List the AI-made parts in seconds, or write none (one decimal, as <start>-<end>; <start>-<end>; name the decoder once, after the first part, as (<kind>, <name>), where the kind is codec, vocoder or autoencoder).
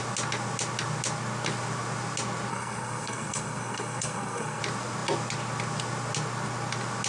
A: 2.5-4.6 (codec, SNAC)